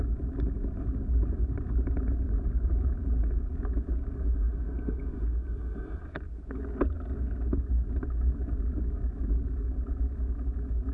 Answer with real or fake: real